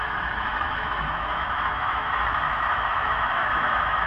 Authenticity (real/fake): fake